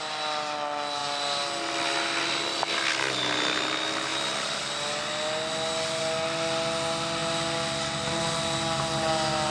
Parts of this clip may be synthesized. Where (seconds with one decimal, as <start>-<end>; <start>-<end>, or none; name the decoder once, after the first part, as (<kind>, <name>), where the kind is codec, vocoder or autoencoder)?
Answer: none